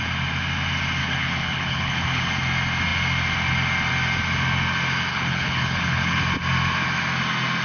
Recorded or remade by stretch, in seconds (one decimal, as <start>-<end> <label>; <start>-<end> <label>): 0.0-1.0 recorded; 1.0-2.2 remade; 2.2-5.1 recorded; 5.1-6.2 remade; 6.2-7.6 recorded